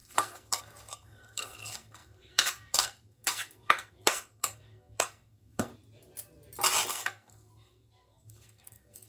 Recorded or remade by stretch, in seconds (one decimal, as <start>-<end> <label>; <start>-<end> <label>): 0.0-5.7 remade; 5.7-6.9 recorded; 6.9-9.1 remade